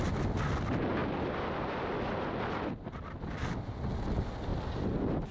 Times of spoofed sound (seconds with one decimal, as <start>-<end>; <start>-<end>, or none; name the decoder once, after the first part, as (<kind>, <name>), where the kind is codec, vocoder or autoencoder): none